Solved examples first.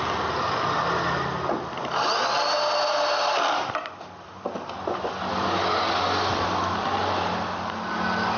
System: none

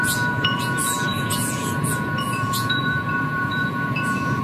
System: vocoder, Vocos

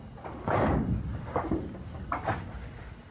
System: none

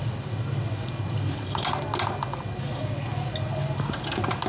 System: none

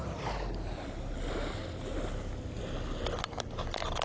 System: none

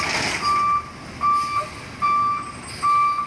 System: none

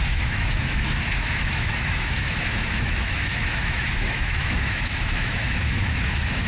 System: autoencoder, DAC-VAE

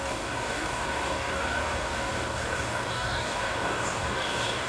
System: codec, DAC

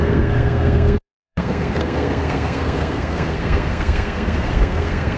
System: codec, SNAC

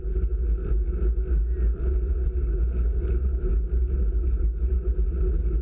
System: none